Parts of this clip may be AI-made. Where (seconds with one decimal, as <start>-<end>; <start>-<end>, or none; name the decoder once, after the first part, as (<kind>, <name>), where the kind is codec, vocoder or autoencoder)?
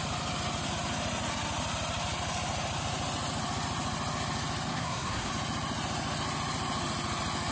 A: 4.7-5.3 (codec, SNAC)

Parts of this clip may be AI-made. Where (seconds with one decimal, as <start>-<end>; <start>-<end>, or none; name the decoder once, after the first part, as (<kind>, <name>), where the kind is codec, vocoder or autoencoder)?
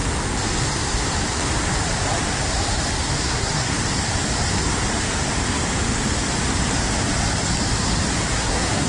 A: 3.2-3.7 (codec, SNAC); 8.3-8.9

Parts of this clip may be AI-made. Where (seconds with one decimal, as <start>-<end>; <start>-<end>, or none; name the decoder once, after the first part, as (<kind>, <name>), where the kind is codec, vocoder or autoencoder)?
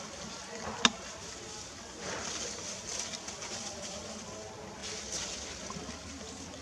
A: none